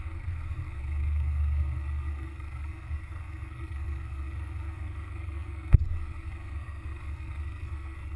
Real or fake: fake